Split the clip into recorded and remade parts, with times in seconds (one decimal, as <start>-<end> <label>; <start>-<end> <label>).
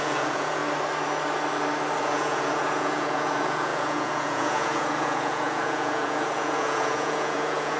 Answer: 0.0-0.6 remade; 0.6-2.0 recorded; 2.0-7.8 remade